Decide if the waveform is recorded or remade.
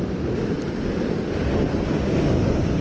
recorded